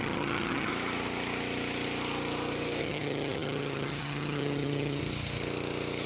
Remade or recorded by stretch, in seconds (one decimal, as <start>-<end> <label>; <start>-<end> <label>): 0.0-0.7 remade; 0.7-2.8 recorded; 2.8-5.0 remade; 5.0-6.1 recorded